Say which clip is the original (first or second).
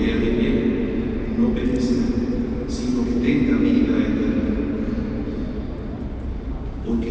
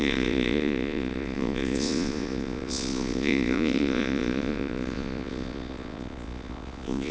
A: first